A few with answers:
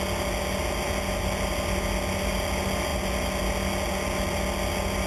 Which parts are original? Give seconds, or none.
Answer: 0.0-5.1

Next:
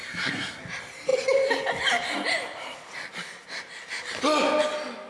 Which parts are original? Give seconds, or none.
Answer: 0.6-5.1

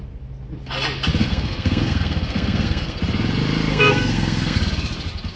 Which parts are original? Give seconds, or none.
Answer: 0.0-1.2; 3.0-3.7; 4.6-5.4

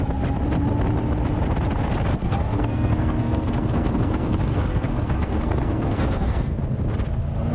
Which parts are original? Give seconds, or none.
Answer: 0.0-2.1; 6.6-7.5

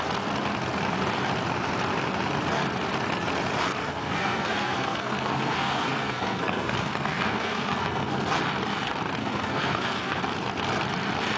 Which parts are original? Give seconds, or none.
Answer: 0.0-3.8; 8.4-9.2; 10.2-11.4

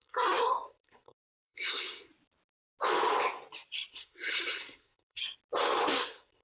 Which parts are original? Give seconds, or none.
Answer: 2.1-3.9; 5.2-5.9